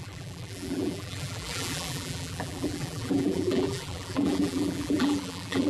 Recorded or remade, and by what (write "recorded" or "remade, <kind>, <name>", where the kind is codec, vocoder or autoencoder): remade, vocoder, BigVGAN v2